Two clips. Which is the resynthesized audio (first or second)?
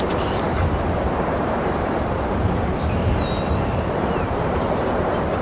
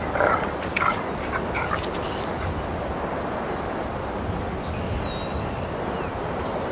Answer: first